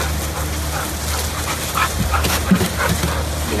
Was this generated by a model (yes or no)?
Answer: no